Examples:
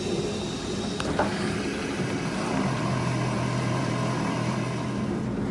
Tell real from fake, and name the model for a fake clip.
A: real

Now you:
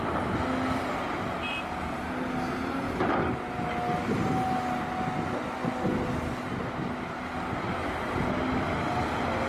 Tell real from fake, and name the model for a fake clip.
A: real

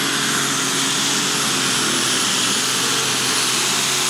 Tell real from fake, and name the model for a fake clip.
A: real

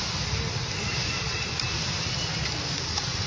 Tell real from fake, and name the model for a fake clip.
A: real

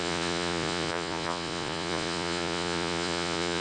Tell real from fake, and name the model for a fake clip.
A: fake, vocoder, Vocos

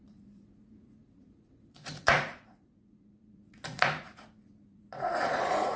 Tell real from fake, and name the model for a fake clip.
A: fake, vocoder, Vocos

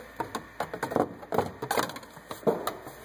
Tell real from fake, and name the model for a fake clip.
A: real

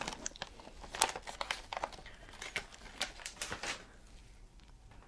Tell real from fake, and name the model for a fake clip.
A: real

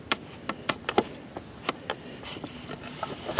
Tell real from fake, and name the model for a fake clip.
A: real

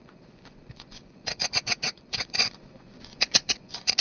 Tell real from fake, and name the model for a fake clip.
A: fake, vocoder, Vocos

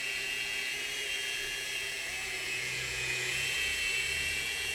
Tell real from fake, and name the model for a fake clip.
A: fake, vocoder, Vocos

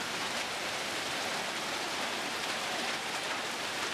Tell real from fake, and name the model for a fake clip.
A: real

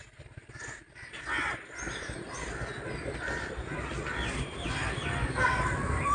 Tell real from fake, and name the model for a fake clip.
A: real